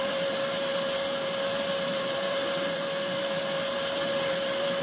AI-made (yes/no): yes